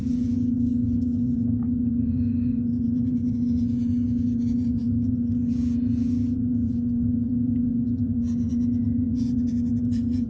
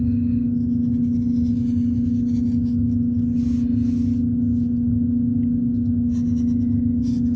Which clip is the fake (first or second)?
first